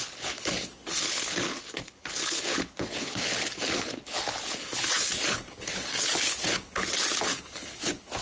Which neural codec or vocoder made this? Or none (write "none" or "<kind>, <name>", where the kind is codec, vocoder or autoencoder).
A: codec, HILCodec